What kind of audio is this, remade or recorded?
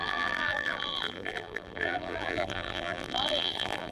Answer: remade